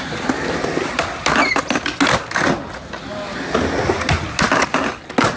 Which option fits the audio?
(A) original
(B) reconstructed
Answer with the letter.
A